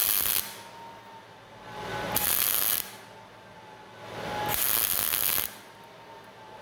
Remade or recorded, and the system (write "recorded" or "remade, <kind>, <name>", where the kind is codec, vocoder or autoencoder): recorded